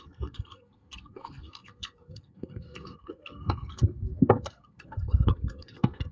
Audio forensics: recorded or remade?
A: remade